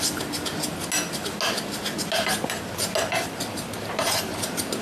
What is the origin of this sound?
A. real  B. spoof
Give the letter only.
A